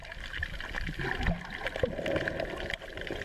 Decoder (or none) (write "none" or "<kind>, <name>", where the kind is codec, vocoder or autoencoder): none